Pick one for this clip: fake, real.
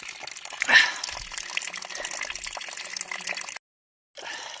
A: real